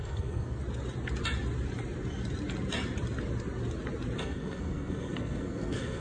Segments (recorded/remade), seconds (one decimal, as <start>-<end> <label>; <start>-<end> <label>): 0.0-0.6 remade; 0.6-4.2 recorded; 4.2-6.0 remade